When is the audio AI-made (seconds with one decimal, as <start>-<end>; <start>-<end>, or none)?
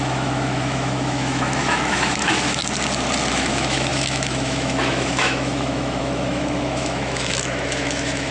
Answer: 0.0-2.6; 3.3-8.3